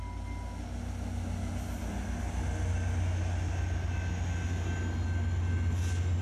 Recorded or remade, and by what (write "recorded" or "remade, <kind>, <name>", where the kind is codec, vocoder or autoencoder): recorded